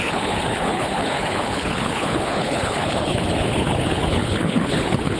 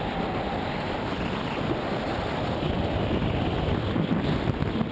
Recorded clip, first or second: second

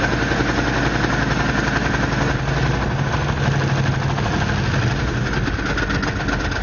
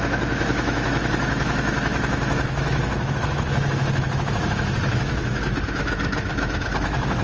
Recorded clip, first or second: first